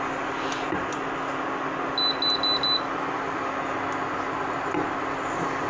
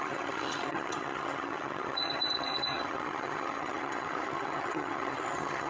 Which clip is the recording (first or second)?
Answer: first